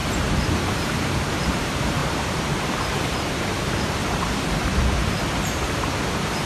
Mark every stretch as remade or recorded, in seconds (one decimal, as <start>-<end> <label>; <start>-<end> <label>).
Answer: 0.0-0.5 recorded; 0.5-4.0 remade; 4.0-5.3 recorded; 5.3-6.5 remade